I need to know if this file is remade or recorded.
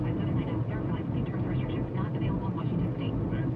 recorded